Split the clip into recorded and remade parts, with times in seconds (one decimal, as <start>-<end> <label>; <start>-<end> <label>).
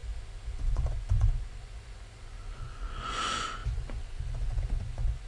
0.0-5.3 remade